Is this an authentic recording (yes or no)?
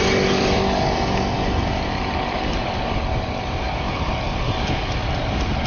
yes